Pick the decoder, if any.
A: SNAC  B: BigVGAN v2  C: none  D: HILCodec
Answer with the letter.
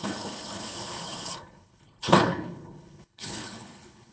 D